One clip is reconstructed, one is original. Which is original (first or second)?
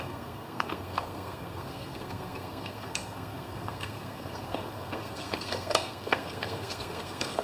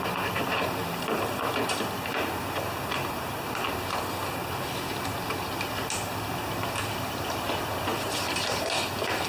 second